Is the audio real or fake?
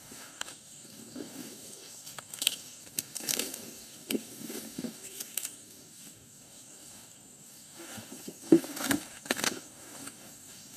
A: fake